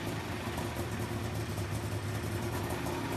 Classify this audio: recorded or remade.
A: recorded